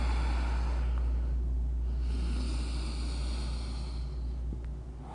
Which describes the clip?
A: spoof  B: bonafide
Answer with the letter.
B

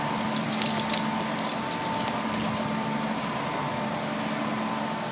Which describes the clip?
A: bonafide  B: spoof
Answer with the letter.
A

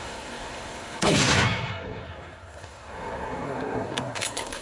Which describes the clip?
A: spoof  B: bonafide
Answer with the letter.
A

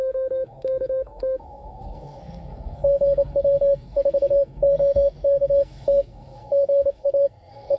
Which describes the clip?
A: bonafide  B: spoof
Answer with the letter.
B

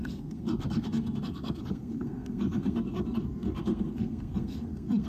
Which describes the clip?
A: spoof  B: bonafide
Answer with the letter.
A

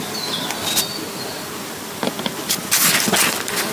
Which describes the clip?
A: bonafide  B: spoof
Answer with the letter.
A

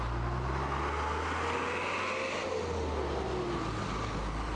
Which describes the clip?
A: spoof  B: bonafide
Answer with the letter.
B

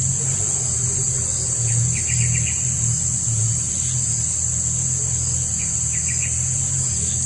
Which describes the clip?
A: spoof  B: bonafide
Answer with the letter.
B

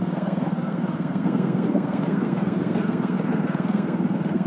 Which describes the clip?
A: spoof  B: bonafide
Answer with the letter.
A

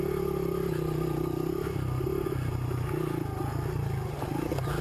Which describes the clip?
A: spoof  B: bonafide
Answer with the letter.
B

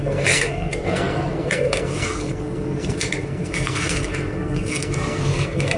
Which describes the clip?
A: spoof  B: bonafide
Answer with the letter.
A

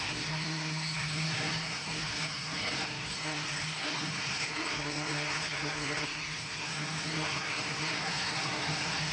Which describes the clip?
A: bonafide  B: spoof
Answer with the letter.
B